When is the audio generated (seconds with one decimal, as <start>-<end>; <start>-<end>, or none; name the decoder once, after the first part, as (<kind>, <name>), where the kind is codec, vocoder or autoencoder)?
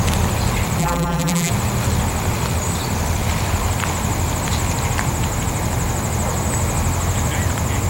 0.8-1.5 (vocoder, BigVGAN v2)